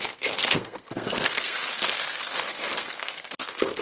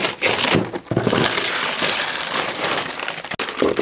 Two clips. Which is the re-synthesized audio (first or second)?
first